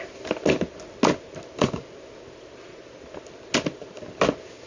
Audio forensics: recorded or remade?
recorded